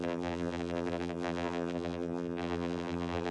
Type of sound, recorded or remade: remade